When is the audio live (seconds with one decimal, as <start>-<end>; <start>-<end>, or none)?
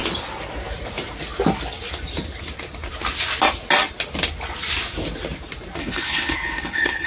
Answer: 0.0-5.8